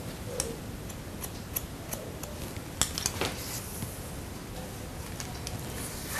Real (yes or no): yes